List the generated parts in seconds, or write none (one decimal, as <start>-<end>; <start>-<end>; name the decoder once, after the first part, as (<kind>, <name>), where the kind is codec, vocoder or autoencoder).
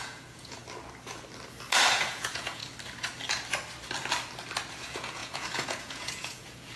0.0-0.6 (vocoder, Vocos); 1.9-2.6; 4.7-6.8